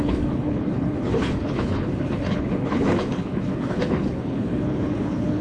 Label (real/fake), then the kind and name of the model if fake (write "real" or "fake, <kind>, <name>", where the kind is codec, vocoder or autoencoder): fake, codec, HILCodec